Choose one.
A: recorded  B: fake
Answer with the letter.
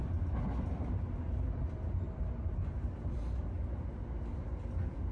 A